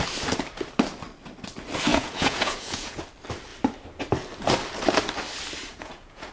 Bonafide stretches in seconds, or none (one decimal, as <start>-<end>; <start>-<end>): 0.0-1.9; 3.0-5.7